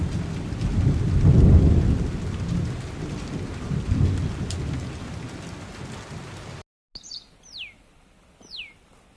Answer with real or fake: real